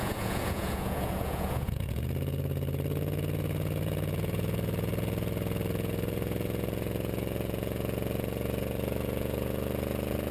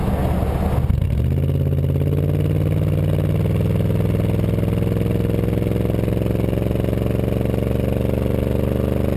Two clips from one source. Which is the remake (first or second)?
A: first